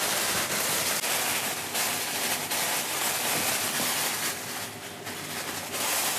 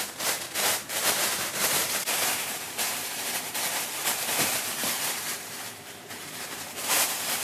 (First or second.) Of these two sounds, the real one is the first